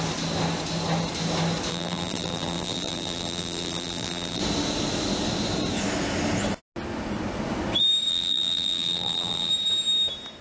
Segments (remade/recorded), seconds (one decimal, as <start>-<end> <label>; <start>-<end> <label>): 0.0-1.7 recorded; 1.7-4.4 remade; 4.4-8.1 recorded; 8.1-9.5 remade; 9.5-10.4 recorded